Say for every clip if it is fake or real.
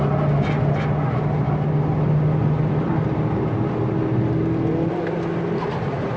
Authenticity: real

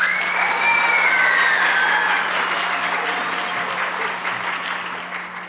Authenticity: real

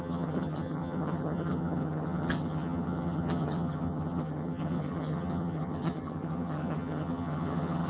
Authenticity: fake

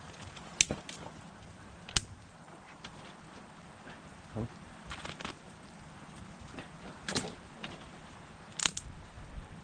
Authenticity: real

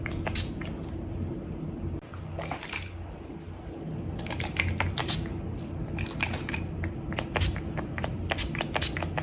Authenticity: real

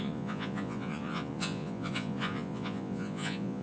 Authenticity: fake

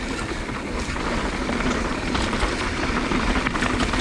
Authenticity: fake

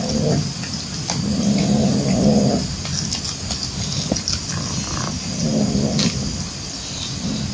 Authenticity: real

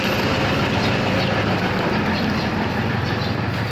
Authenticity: real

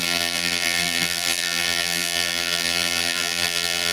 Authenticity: fake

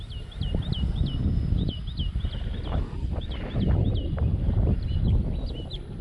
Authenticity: real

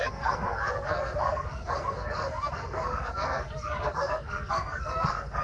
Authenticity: fake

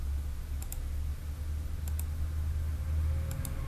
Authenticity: real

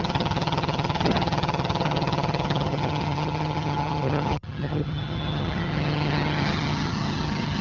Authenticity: fake